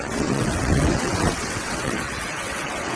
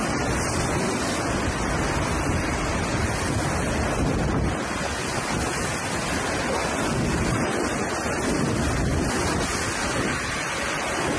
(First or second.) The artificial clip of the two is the first